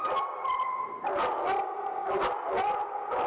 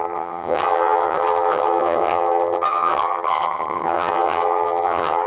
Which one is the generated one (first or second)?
second